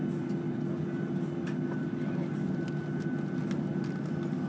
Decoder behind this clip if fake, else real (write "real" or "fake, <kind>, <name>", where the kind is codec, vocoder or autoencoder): real